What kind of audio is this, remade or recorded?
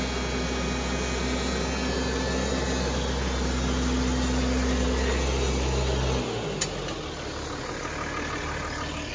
recorded